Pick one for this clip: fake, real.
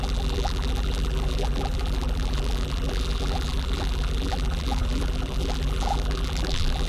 fake